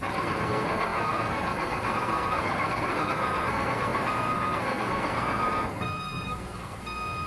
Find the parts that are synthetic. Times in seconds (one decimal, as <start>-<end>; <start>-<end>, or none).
0.0-7.3